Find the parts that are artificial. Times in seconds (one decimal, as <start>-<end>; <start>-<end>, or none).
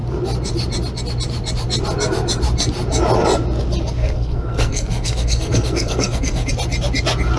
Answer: 4.0-6.5